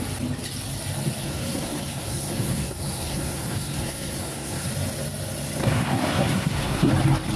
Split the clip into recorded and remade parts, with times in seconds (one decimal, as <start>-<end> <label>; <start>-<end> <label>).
0.0-1.2 recorded; 1.2-4.7 remade; 4.7-5.6 recorded; 5.6-6.9 remade; 6.9-7.4 recorded